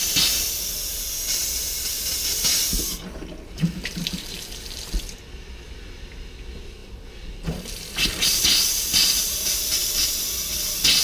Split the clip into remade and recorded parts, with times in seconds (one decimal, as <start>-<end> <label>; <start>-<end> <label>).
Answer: 0.0-3.8 recorded; 3.8-4.9 remade; 4.9-11.0 recorded